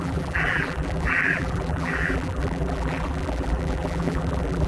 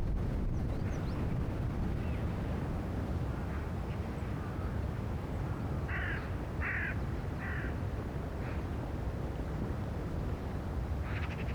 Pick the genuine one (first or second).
second